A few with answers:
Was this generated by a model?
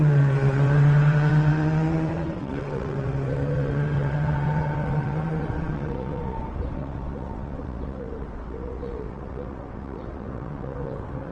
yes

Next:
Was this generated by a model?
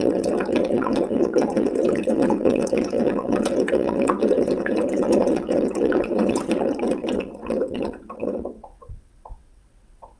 yes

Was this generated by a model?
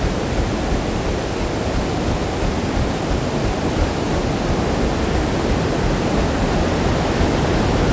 no